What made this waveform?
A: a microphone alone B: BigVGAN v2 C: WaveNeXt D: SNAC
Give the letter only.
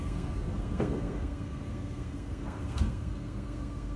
D